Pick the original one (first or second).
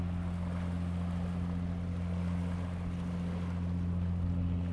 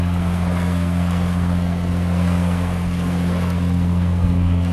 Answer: first